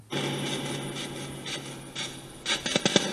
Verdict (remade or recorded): recorded